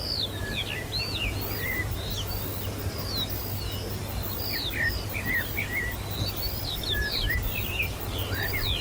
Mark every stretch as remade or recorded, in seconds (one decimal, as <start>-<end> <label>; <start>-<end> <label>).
0.0-8.8 recorded